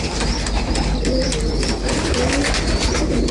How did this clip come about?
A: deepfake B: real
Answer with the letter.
A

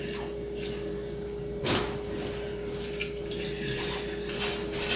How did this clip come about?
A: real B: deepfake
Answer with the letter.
A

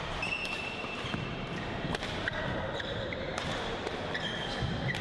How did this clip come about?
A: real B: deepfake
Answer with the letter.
B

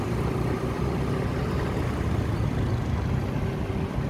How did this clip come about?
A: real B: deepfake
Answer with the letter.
A